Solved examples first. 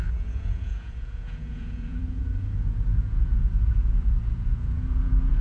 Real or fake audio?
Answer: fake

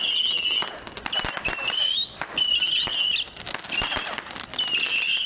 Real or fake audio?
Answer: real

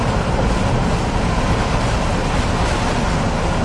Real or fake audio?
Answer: real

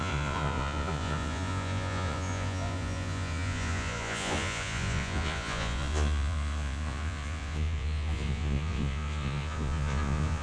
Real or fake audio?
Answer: fake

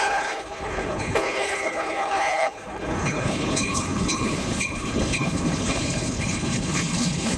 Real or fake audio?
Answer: fake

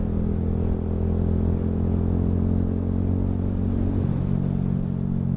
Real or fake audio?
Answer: real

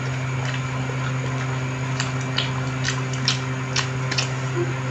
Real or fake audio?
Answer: real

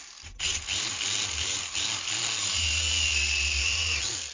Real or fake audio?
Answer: real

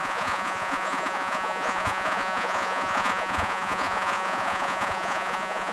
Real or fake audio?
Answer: fake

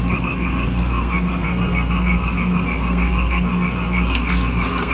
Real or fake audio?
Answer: fake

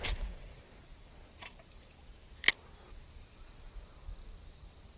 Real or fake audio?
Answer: real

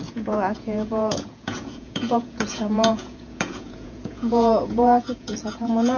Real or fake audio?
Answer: fake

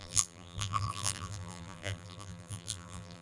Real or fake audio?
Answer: fake